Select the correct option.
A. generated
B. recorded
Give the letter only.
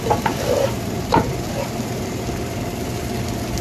A